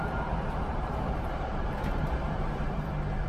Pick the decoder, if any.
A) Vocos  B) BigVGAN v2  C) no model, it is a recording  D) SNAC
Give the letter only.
B